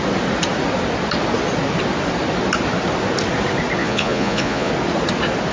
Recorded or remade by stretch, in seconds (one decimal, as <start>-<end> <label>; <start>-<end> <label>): 0.0-3.8 recorded; 3.8-4.7 remade; 4.7-5.5 recorded